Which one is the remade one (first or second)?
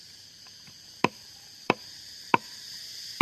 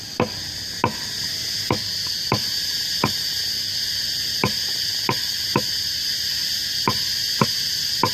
first